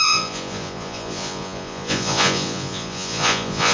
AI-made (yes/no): yes